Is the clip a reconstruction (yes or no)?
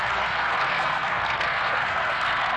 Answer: yes